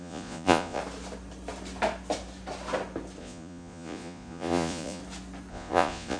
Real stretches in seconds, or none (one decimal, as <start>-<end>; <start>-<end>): 0.8-3.2; 5.0-5.5